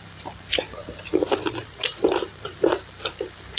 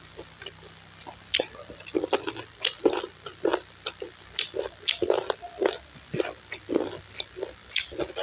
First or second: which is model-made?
first